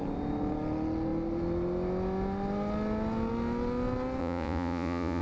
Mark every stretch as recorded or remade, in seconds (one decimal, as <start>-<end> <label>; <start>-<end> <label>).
0.0-4.2 recorded; 4.2-5.2 remade